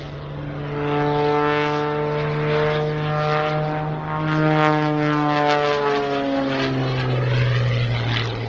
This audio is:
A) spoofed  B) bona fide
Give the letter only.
B